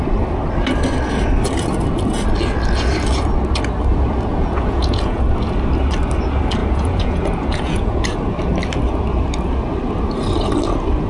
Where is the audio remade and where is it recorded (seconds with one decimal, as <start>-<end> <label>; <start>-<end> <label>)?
0.0-4.3 recorded; 4.3-5.2 remade; 5.2-6.6 recorded; 6.6-8.2 remade; 8.2-11.1 recorded